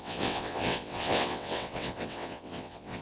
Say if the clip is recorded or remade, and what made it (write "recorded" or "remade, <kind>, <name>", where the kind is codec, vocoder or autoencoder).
remade, vocoder, WaveNeXt